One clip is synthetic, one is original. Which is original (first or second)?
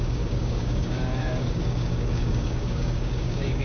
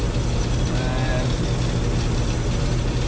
second